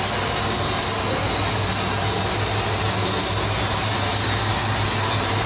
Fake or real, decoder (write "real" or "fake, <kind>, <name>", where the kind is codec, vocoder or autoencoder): real